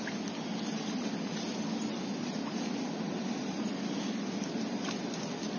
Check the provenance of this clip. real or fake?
real